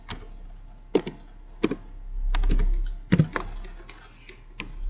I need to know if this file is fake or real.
real